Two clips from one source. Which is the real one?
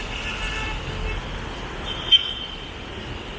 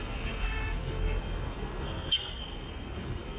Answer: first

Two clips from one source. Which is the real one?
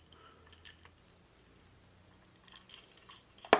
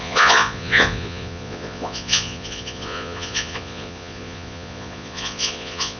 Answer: first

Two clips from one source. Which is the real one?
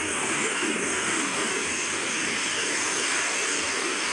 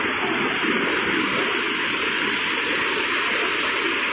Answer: second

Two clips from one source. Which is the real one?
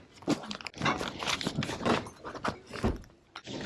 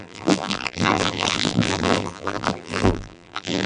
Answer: first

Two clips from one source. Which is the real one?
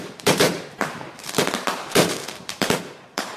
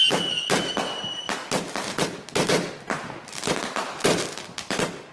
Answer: second